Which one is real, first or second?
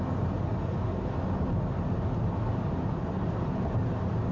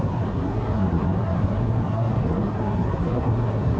first